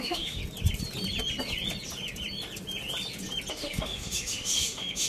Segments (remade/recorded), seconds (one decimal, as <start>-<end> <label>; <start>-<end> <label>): 0.0-0.4 remade; 0.4-3.5 recorded; 3.5-5.1 remade